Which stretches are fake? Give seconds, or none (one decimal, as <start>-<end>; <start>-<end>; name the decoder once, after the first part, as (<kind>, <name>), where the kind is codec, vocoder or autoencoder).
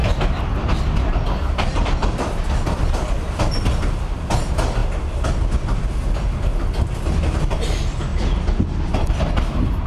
0.0-3.4 (vocoder, BigVGAN v2); 8.1-9.1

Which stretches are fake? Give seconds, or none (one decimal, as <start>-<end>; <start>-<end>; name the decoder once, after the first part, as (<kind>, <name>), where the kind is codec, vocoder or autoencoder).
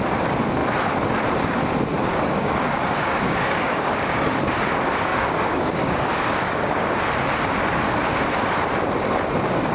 2.1-4.4 (codec, DAC); 5.1-7.0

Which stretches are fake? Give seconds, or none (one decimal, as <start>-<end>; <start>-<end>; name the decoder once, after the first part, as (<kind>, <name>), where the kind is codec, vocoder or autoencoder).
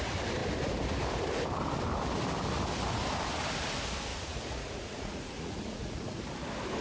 4.1-6.2 (vocoder, Vocos)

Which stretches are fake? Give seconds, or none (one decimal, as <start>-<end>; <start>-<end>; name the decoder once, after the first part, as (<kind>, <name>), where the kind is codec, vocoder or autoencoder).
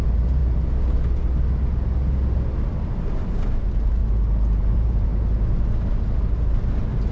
0.0-0.4 (vocoder, BigVGAN v2); 3.0-4.0; 4.6-5.1; 5.9-7.1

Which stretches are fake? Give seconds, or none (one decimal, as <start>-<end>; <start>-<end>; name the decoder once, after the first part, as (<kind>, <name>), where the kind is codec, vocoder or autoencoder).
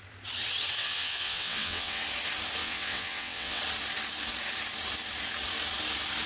0.8-2.0 (vocoder, WaveNeXt); 2.6-3.6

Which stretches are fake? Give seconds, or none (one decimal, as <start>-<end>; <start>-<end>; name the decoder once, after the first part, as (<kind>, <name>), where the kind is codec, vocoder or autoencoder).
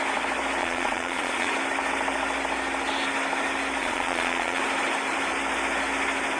0.6-1.5 (vocoder, Vocos); 3.8-4.6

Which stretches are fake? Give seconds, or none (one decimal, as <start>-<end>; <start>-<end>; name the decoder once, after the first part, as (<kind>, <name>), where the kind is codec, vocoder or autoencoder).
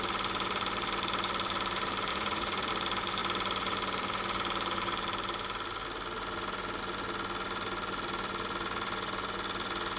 2.1-2.7 (vocoder, Vocos)